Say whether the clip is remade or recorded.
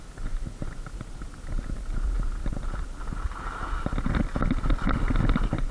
recorded